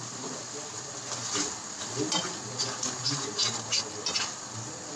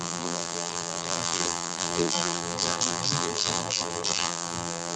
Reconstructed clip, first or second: second